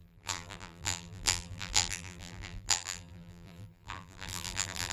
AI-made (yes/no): yes